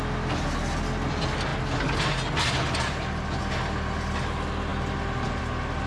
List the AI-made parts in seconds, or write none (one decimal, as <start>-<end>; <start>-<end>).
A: none